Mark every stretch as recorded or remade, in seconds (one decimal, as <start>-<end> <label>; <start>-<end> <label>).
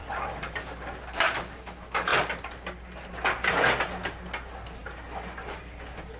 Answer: 0.0-6.2 recorded